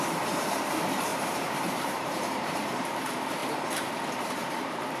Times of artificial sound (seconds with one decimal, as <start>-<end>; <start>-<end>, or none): 1.1-3.0; 4.4-5.0